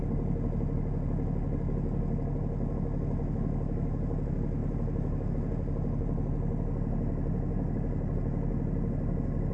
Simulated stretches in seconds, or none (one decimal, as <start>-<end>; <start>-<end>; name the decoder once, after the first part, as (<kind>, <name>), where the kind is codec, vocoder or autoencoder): none

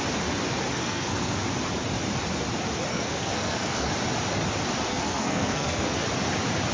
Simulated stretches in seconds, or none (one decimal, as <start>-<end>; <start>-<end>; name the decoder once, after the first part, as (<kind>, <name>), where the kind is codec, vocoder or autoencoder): 0.8-1.4 (codec, SNAC); 2.9-3.9; 4.9-6.0